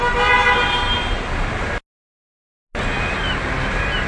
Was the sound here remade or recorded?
recorded